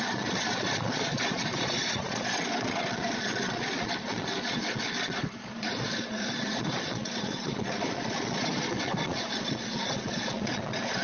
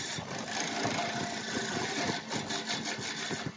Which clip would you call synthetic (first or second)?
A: first